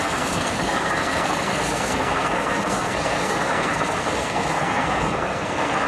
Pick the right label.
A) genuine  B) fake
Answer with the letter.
B